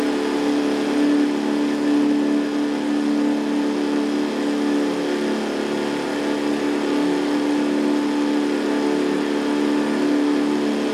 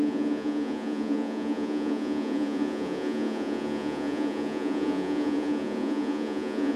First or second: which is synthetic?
second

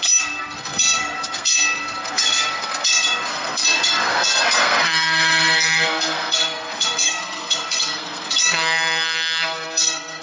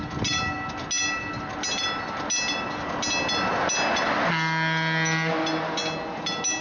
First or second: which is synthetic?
first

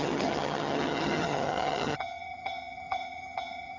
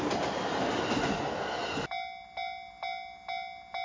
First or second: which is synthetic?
first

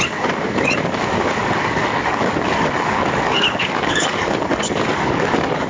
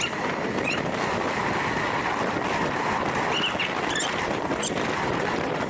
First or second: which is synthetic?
first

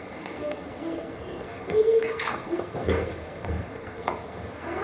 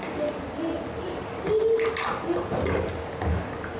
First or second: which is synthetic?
first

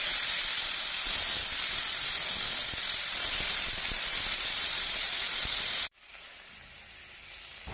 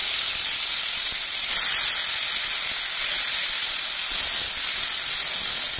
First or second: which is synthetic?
first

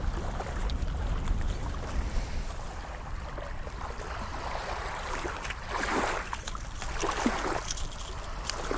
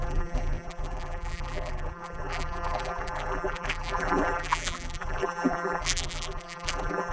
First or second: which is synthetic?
second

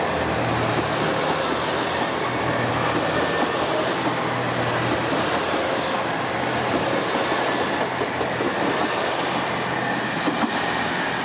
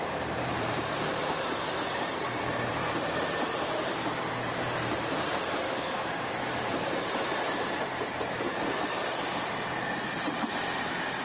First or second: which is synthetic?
second